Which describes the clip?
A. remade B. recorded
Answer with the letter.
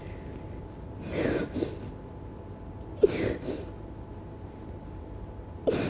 B